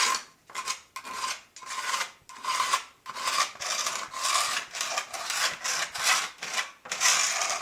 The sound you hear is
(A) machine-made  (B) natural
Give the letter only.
B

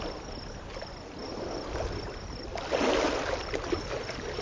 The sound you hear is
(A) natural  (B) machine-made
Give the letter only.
A